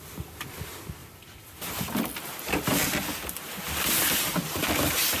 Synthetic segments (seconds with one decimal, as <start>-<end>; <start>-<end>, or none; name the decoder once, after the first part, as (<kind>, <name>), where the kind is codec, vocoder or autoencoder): 1.0-1.7 (vocoder, BigVGAN v2); 2.7-3.5; 4.0-4.7